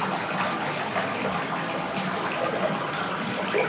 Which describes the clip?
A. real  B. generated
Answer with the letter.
A